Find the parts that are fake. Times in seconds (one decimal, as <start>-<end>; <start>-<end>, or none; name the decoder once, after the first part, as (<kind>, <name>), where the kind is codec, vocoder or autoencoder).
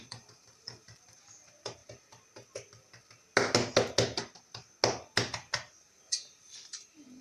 0.0-1.8 (vocoder, BigVGAN v2); 5.8-7.2